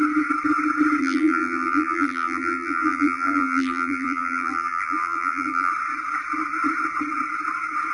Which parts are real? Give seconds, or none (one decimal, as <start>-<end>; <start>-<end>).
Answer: 0.0-1.0; 5.7-7.9